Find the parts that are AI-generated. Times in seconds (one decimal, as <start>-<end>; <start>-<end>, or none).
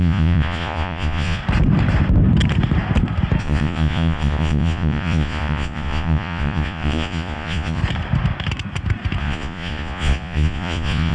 0.0-1.4; 3.4-7.8; 9.2-11.1